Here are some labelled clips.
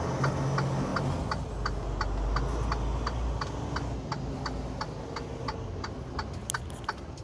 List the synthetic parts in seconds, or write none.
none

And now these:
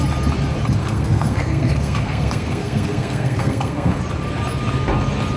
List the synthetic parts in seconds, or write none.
0.8-4.0 (codec, SNAC)

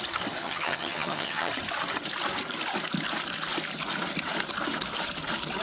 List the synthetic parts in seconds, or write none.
0.4-1.5 (vocoder, HiFi-GAN)

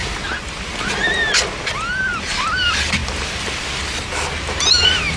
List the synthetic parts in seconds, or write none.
0.0-5.2 (vocoder, BigVGAN v2)

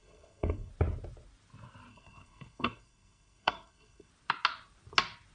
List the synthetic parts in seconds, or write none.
0.0-0.7 (codec, SNAC); 1.9-4.1